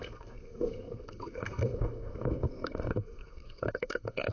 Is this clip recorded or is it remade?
remade